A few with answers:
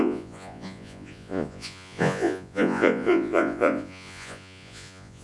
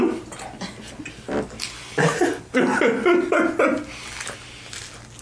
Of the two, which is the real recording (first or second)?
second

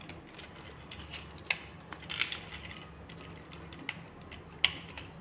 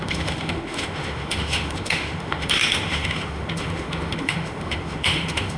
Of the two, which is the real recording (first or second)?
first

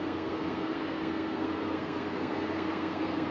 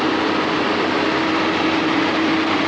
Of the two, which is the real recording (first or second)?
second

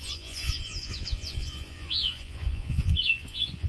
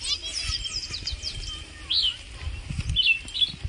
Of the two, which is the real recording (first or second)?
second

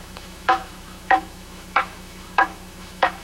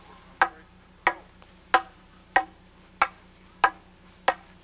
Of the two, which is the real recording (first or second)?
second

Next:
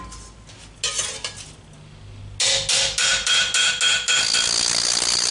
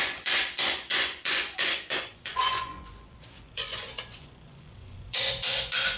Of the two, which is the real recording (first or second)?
first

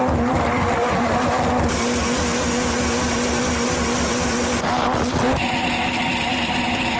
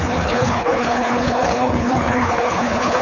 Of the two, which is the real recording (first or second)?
first